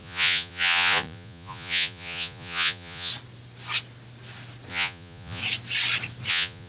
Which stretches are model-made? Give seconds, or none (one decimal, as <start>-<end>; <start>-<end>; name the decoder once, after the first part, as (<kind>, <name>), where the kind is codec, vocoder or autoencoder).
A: 0.0-3.1 (vocoder, Vocos); 4.7-5.4; 6.3-6.7